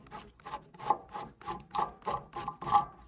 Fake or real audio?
real